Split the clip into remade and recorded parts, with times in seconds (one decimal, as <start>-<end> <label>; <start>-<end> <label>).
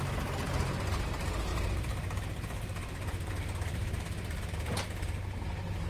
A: 0.0-1.5 recorded; 1.5-3.3 remade; 3.3-3.7 recorded; 3.7-4.5 remade; 4.5-5.9 recorded